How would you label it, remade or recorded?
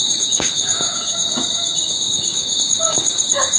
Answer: remade